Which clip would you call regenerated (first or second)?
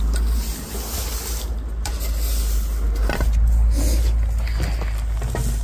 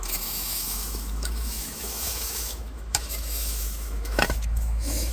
second